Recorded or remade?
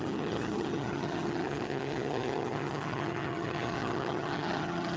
remade